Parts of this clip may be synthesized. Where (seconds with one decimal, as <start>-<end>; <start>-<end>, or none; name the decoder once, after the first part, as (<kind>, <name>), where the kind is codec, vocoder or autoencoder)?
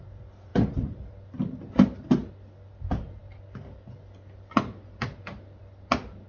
none